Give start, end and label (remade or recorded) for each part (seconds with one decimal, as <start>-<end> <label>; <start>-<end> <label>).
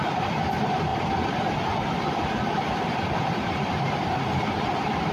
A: 0.0-0.9 recorded; 0.9-3.2 remade; 3.2-5.1 recorded